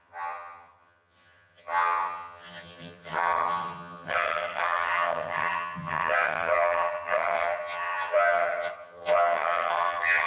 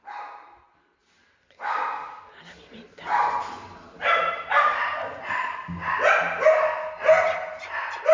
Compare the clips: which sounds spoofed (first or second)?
first